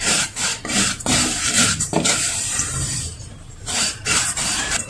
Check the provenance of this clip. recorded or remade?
remade